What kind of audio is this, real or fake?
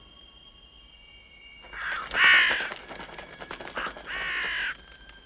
real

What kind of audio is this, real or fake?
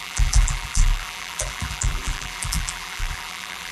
fake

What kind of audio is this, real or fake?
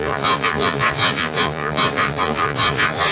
fake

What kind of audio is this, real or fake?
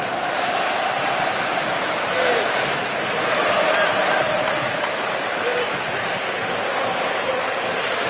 fake